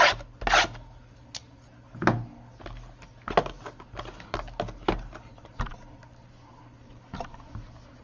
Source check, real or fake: real